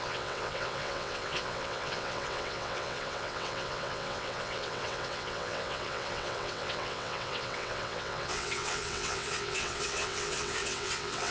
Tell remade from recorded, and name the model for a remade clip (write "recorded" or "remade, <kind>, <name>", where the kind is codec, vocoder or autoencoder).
remade, vocoder, WaveNeXt